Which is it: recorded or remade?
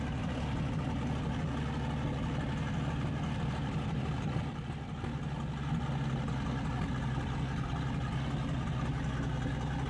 recorded